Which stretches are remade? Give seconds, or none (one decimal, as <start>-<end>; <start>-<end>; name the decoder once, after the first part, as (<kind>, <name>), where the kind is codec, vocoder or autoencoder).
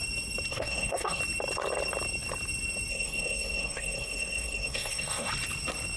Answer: 0.5-1.2 (codec, SNAC); 2.9-5.3